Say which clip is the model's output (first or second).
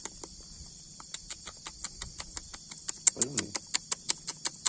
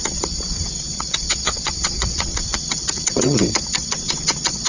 second